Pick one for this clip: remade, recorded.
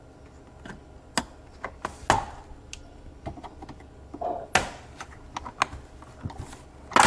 recorded